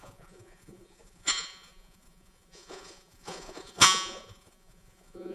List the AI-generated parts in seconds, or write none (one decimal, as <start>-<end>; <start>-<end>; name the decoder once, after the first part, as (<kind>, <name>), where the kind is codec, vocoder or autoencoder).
0.0-5.3 (vocoder, Vocos)